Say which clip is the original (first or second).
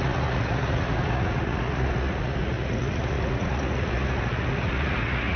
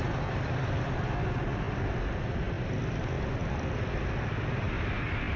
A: second